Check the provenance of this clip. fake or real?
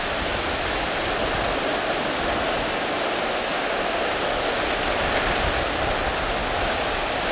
real